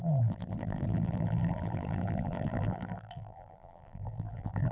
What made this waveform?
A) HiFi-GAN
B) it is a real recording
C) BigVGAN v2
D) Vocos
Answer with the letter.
C